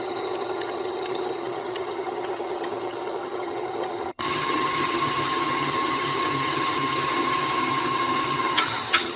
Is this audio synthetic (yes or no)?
yes